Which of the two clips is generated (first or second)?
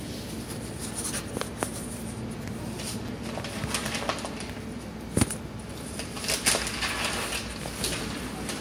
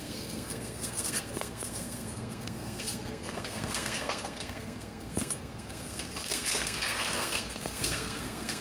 second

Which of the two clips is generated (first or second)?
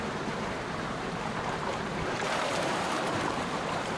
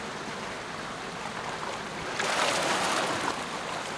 first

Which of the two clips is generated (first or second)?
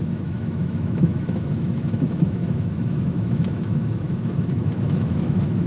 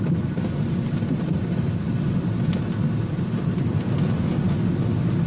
first